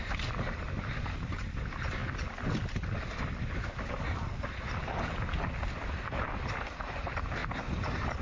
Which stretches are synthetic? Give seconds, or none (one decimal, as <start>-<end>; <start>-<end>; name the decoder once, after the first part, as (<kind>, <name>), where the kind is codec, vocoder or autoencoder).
0.0-2.0 (vocoder, BigVGAN v2); 6.9-7.4